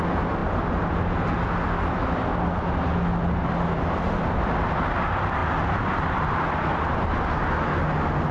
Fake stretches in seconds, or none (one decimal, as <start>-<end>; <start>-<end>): none